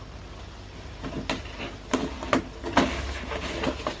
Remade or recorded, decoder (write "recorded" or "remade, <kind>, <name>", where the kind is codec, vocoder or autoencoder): recorded